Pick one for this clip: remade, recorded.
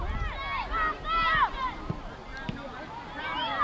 recorded